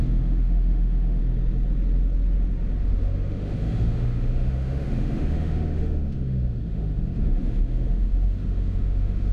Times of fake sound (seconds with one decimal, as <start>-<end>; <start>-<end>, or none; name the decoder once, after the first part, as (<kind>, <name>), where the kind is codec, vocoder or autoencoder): 0.0-1.2 (autoencoder, DAC-VAE); 2.8-9.3